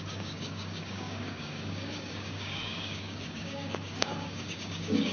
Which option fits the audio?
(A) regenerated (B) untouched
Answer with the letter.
A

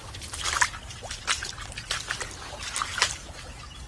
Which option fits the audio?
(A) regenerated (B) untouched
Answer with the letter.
B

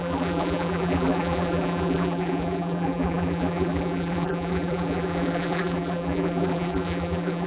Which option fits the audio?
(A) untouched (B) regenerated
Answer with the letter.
B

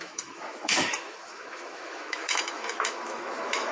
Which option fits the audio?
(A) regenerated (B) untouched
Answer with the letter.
A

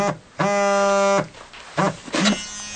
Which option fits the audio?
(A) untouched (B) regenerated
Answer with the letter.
A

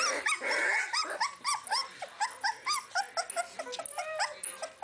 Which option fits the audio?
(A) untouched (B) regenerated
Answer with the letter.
A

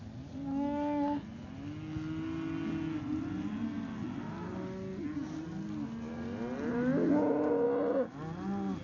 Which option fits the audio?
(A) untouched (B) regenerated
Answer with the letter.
A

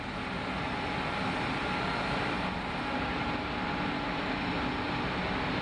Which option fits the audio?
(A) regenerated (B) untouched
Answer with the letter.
B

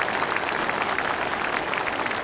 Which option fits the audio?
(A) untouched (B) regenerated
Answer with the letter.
A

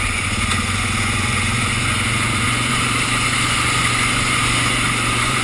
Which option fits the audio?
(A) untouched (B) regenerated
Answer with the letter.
B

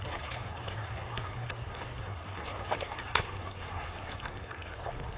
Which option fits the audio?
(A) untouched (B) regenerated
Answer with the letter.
B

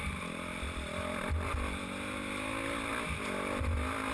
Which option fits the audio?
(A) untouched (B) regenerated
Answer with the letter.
A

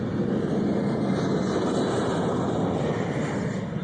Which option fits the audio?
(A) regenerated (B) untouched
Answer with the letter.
B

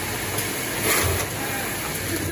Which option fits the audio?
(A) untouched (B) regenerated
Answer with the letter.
A